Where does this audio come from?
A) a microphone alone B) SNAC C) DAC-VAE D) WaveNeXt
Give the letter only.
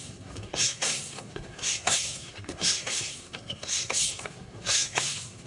B